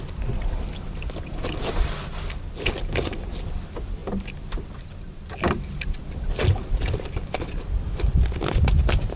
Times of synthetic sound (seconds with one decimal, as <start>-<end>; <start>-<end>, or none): none